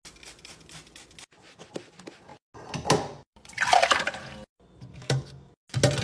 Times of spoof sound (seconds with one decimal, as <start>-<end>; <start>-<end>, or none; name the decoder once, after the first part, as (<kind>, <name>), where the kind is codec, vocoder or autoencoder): 4.9-5.5 (codec, DAC)